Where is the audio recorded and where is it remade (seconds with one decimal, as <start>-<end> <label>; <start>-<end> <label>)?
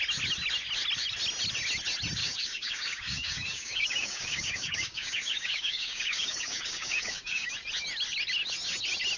0.0-2.2 recorded; 2.2-7.5 remade; 7.5-9.2 recorded